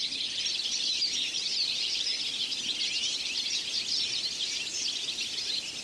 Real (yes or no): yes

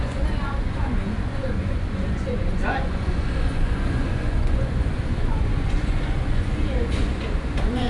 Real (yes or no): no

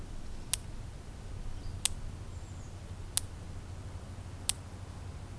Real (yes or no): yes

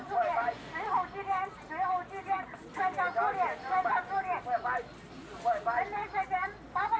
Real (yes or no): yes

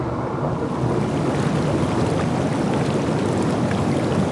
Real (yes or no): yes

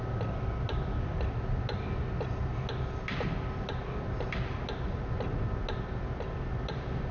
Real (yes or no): yes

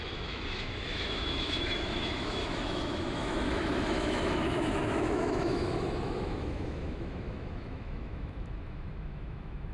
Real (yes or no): no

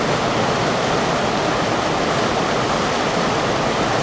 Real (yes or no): yes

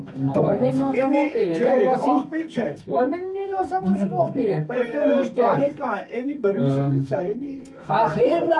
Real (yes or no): no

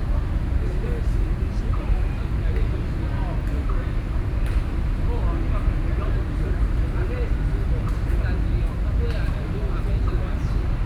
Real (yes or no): yes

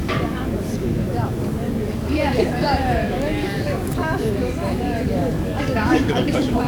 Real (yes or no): no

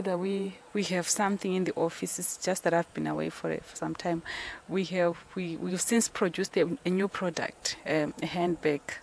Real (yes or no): no